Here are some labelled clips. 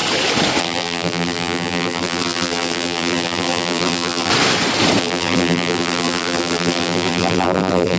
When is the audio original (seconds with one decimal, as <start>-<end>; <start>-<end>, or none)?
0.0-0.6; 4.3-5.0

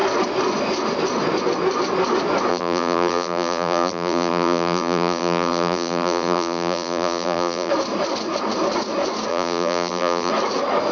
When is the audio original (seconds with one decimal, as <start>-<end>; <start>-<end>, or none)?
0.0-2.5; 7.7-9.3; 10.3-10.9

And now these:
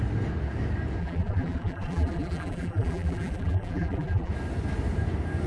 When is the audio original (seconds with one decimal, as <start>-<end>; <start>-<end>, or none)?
0.0-1.0; 4.3-5.5

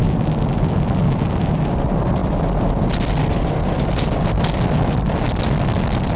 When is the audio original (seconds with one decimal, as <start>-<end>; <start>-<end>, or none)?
0.0-6.2